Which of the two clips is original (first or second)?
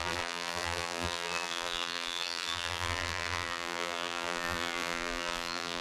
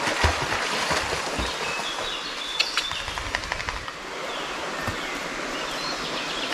second